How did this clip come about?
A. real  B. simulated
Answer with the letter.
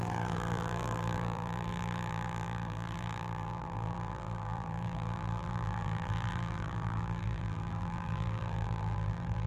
B